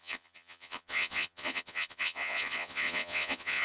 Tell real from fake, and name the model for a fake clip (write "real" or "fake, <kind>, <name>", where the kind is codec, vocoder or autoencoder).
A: fake, vocoder, Vocos